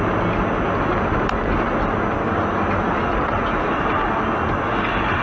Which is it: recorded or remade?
recorded